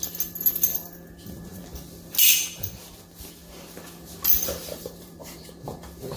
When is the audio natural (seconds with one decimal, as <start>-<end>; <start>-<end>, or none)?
0.0-4.6; 5.5-6.2